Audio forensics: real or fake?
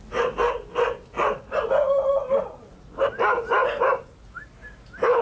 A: real